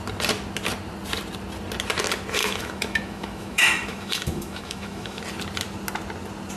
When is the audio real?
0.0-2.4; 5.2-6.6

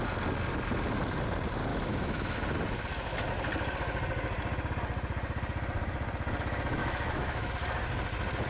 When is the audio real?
0.0-1.7; 2.4-6.8; 7.5-8.5

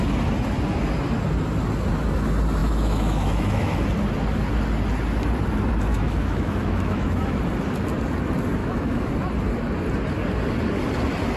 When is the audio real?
0.0-2.6; 3.8-5.9; 7.4-8.6; 9.1-11.4

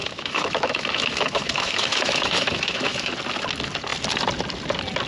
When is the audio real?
3.1-5.1